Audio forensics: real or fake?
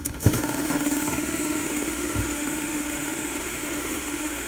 fake